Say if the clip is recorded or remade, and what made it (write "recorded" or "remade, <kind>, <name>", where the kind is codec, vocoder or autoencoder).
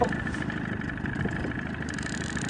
recorded